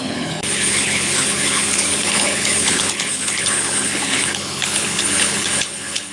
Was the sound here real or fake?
fake